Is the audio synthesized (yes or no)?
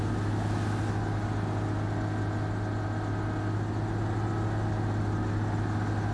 no